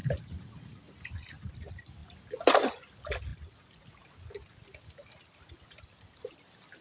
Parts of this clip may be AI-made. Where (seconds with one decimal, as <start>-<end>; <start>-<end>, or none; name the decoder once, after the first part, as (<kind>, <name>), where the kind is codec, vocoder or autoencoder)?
none